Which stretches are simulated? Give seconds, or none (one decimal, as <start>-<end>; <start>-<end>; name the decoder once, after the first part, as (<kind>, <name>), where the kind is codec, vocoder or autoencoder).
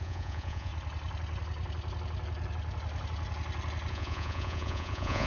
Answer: 0.0-0.7 (vocoder, Vocos); 3.9-5.3